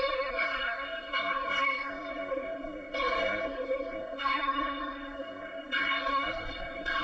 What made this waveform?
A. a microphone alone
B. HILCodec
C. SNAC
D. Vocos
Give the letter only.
C